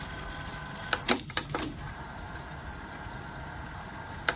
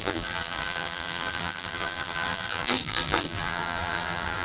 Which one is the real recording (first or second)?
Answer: first